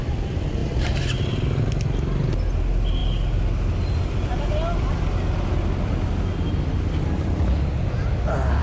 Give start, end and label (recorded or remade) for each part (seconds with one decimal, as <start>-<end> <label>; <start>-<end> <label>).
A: 0.0-8.6 recorded